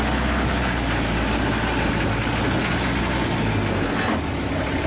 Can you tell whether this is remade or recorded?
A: recorded